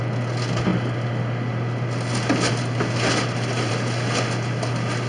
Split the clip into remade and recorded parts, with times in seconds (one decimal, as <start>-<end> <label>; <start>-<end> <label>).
0.0-5.1 recorded